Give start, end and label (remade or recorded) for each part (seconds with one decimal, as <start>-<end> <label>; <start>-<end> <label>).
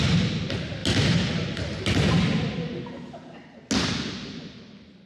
0.0-5.1 recorded